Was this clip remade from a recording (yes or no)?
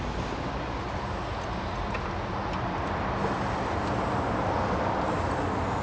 no